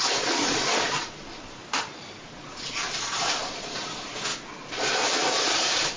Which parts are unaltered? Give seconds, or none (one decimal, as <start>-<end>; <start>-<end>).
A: 1.6-2.2